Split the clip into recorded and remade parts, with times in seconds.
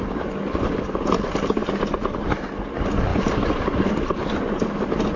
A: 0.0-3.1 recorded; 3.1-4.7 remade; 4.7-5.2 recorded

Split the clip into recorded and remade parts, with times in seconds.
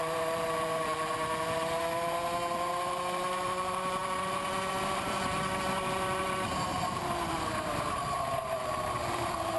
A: 0.0-9.6 remade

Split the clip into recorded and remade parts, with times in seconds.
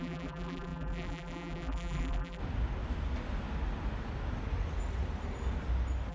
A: 0.0-2.4 remade; 2.4-6.1 recorded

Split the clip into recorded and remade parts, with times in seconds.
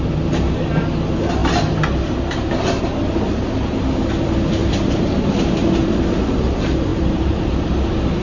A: 0.0-4.6 recorded; 4.6-6.2 remade; 6.2-6.9 recorded; 6.9-7.7 remade; 7.7-8.2 recorded